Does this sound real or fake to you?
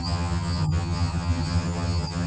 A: fake